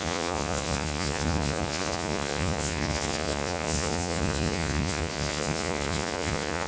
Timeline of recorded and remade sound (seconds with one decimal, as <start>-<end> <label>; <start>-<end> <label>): 0.0-6.7 remade